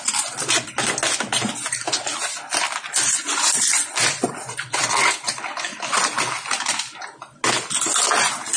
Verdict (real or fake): real